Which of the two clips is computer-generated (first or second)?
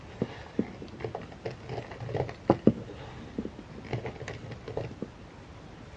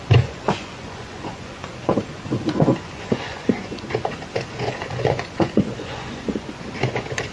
second